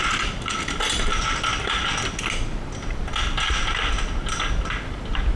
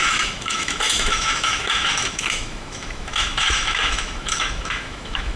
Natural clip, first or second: first